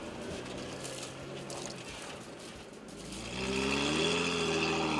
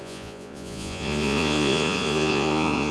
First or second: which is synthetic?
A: second